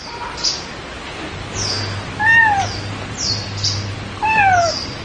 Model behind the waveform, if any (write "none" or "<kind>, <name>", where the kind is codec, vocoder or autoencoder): none